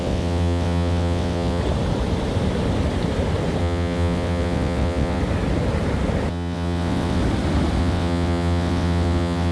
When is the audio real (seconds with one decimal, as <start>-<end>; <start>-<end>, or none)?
1.6-3.6; 5.2-6.3; 7.2-7.8